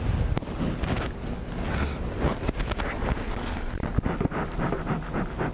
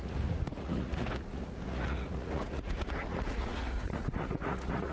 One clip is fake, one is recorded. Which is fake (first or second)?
second